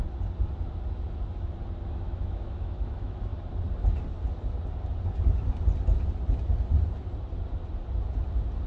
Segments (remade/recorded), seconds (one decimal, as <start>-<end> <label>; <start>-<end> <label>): 0.0-1.9 recorded; 1.9-3.3 remade; 3.3-8.7 recorded